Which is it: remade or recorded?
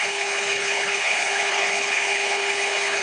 remade